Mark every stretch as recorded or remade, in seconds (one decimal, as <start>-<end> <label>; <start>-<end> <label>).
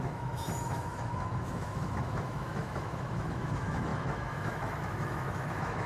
0.0-5.9 remade